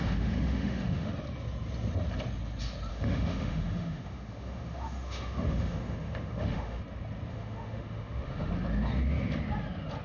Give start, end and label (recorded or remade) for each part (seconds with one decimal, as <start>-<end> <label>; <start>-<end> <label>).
0.0-1.1 remade; 1.1-2.9 recorded; 2.9-6.8 remade; 6.8-7.3 recorded; 7.3-8.5 remade; 8.5-10.0 recorded